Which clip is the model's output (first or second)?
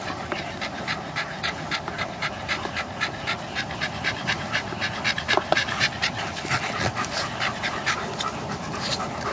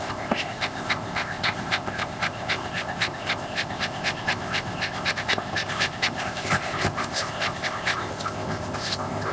second